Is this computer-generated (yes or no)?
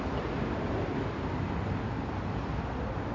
no